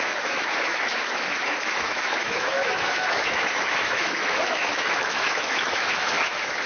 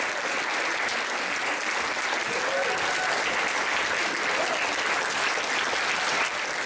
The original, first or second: second